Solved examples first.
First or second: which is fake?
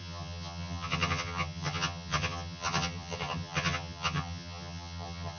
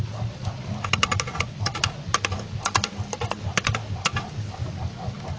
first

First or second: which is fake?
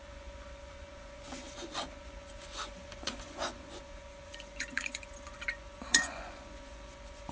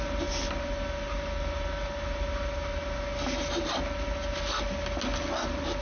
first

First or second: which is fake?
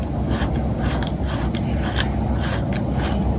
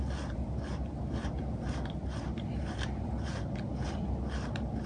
second